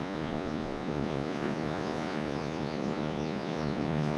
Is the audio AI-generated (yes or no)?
yes